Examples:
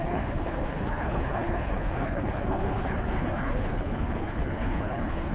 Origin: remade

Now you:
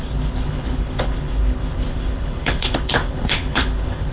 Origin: remade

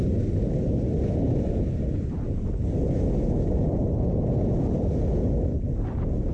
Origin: recorded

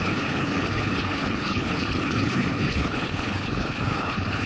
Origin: remade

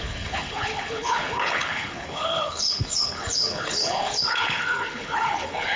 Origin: remade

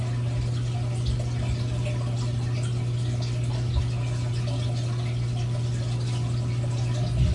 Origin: recorded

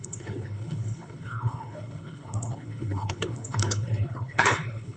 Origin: remade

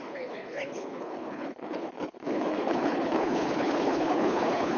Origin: remade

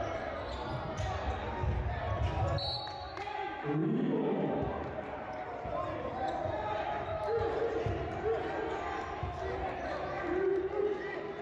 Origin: recorded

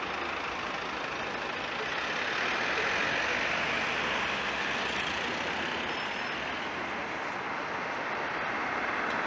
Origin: recorded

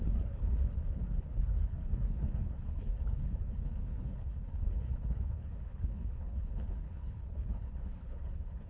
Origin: remade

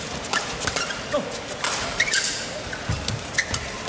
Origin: recorded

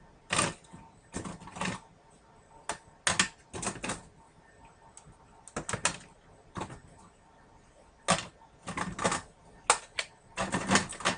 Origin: recorded